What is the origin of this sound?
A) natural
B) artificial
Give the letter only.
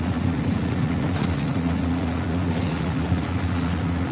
B